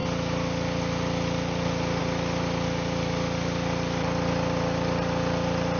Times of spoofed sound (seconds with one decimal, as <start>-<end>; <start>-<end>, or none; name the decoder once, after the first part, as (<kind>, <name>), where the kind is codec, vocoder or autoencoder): none